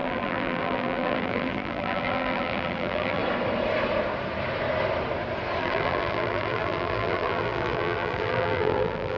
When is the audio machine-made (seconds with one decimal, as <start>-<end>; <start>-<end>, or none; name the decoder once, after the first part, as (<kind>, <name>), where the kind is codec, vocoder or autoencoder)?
0.0-3.2 (vocoder, BigVGAN v2); 5.6-9.2

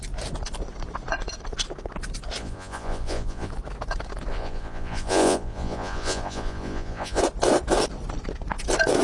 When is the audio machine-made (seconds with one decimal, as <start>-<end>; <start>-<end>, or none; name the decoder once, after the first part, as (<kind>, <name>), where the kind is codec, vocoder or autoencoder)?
2.4-3.5 (vocoder, Vocos); 4.3-7.2

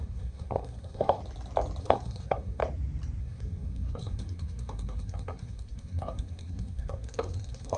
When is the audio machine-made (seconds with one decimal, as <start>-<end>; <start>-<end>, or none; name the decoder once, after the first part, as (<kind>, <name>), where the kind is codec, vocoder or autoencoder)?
0.0-1.2 (codec, SNAC); 1.8-2.6; 3.2-7.8

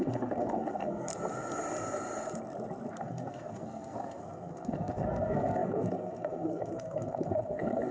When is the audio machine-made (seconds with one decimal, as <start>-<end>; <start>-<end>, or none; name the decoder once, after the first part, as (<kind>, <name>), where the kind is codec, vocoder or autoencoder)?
0.0-1.1 (codec, SNAC); 2.9-7.9

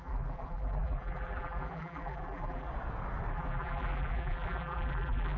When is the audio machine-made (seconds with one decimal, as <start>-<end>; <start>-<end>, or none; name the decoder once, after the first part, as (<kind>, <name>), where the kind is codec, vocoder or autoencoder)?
0.0-2.7 (vocoder, BigVGAN v2); 3.3-5.4